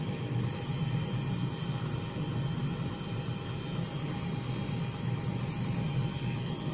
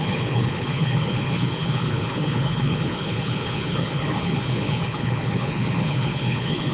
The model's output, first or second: second